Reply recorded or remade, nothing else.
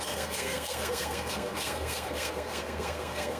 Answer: remade